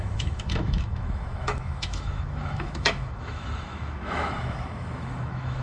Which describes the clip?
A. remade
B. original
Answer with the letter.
A